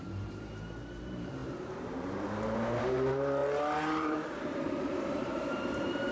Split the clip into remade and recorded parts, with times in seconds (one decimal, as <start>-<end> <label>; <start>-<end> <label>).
0.0-6.1 remade